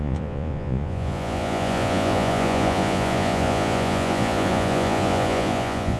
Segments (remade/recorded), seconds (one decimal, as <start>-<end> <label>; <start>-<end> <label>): 0.0-6.0 remade